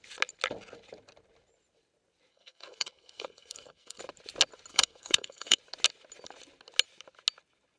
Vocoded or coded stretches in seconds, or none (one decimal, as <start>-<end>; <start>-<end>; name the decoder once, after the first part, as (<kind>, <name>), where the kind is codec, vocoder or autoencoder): 2.3-4.0 (codec, SNAC); 4.7-5.6